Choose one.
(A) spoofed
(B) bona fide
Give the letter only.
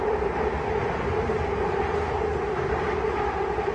B